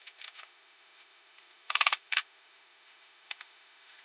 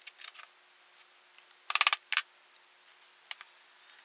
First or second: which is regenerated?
first